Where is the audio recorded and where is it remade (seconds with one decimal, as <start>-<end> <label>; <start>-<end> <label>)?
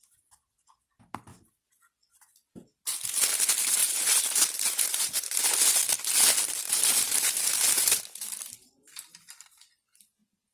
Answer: 0.0-3.8 recorded; 3.8-5.4 remade; 5.4-6.6 recorded; 6.6-7.3 remade; 7.3-10.5 recorded